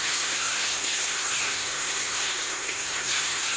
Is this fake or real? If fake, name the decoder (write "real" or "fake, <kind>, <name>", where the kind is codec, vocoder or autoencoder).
fake, codec, SNAC